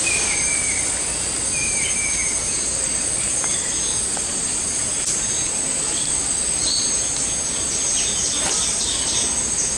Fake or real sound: real